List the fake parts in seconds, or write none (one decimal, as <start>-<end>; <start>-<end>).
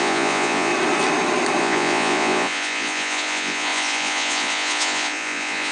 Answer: 0.0-0.7; 1.6-5.7